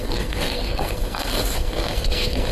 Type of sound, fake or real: fake